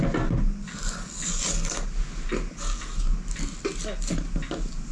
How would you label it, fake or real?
real